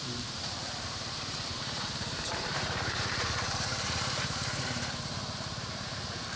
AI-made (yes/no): yes